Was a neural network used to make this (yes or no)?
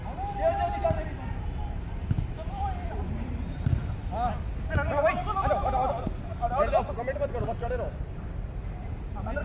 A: no